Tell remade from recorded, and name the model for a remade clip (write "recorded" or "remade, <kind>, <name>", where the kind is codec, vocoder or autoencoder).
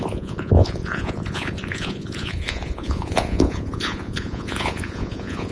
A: remade, vocoder, Vocos